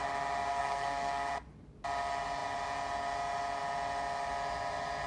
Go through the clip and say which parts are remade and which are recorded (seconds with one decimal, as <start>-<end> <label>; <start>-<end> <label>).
0.0-0.5 recorded; 0.5-1.3 remade; 1.3-5.1 recorded